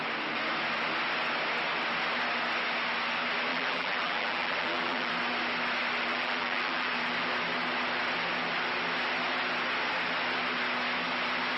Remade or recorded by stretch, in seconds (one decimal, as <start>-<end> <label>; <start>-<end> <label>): 0.0-3.5 recorded; 3.5-5.1 remade; 5.1-6.1 recorded; 6.1-6.9 remade; 6.9-11.6 recorded